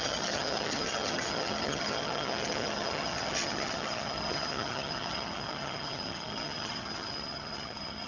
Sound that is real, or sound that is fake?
fake